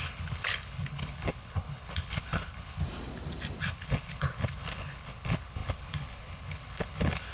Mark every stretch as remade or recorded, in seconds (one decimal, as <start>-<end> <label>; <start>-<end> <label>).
0.0-2.8 remade; 2.8-3.6 recorded; 3.6-7.3 remade